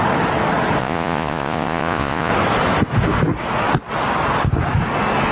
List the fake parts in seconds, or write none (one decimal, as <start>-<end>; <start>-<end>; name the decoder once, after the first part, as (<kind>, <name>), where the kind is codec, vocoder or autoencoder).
0.8-2.3 (vocoder, Vocos)